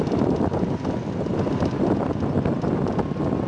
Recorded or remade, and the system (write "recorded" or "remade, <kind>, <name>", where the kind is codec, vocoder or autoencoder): recorded